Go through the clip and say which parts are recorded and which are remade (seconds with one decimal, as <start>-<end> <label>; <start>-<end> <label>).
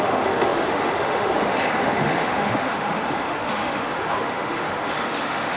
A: 0.0-5.6 remade